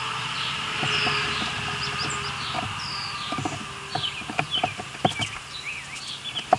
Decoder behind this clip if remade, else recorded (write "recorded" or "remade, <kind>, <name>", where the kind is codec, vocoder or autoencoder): recorded